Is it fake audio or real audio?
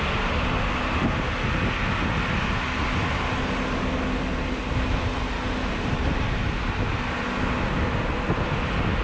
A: real